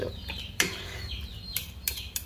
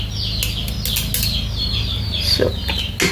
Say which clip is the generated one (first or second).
first